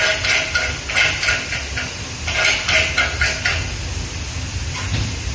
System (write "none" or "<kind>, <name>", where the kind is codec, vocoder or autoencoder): none